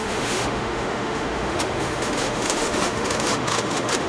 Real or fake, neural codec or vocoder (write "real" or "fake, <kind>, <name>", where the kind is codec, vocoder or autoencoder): fake, autoencoder, DAC-VAE